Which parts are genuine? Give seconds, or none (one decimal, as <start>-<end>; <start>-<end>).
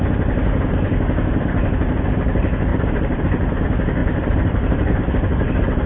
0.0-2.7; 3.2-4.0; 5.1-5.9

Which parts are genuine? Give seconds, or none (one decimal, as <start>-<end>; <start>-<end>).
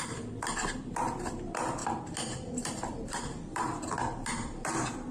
0.0-1.8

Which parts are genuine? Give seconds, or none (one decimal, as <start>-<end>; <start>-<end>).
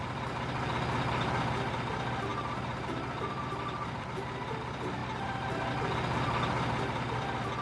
0.0-2.3; 3.5-5.0; 5.7-7.6